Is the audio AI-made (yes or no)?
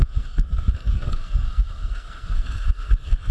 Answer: yes